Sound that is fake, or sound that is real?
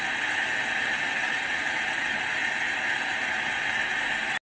real